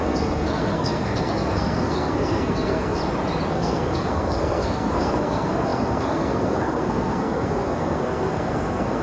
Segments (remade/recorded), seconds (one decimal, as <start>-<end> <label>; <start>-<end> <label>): 0.0-3.0 remade; 3.0-3.5 recorded; 3.5-9.0 remade